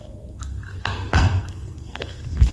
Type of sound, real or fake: fake